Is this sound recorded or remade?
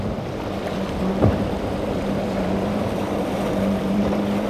remade